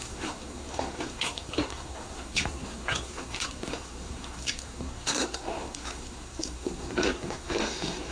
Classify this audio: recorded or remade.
remade